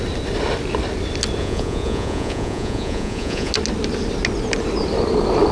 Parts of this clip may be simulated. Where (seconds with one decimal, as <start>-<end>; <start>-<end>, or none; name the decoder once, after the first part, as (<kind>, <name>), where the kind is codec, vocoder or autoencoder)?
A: 1.4-3.5 (vocoder, Vocos)